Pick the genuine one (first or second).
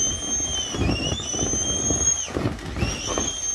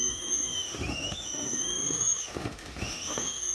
first